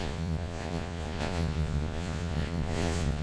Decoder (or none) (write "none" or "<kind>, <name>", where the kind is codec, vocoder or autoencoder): vocoder, Vocos